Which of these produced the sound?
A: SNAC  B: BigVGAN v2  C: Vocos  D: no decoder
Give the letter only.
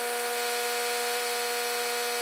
D